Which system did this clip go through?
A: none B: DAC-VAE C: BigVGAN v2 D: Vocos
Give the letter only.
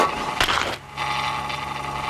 A